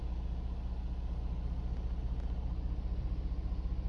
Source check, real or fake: real